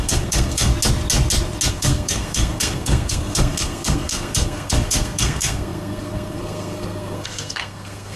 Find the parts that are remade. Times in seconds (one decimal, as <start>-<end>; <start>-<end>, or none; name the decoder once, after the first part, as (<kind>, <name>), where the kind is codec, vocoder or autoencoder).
0.0-0.7 (codec, SNAC); 1.7-8.2